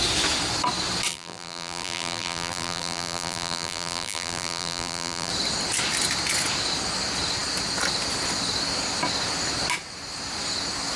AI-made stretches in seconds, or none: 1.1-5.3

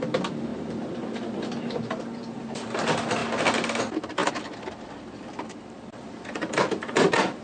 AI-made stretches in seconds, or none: 0.0-3.2; 3.8-7.4

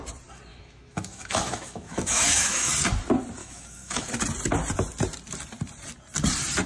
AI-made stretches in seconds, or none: 0.5-2.7; 3.4-4.1

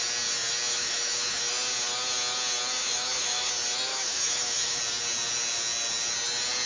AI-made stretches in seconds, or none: 0.7-1.4; 2.8-3.5; 3.9-4.8

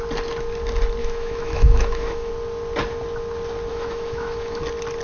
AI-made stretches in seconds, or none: 1.0-2.3; 3.7-4.6

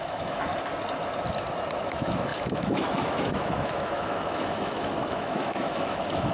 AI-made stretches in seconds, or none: 0.0-0.5; 1.9-6.3

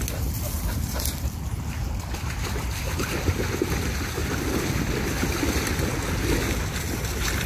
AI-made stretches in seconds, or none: 4.2-5.2

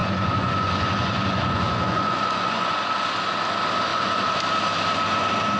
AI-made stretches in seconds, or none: 0.0-2.8; 3.9-4.4